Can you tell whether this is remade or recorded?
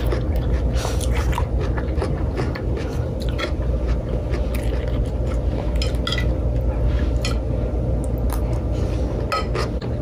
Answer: recorded